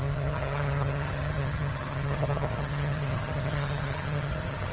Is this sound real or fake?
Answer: fake